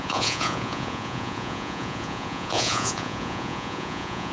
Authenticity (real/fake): fake